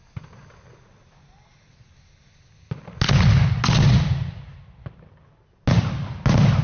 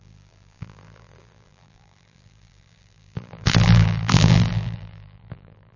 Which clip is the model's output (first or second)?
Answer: second